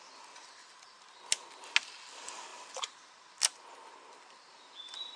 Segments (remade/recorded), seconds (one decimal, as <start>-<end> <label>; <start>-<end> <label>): 0.0-5.2 recorded